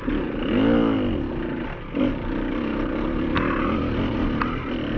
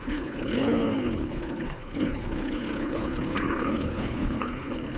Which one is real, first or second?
first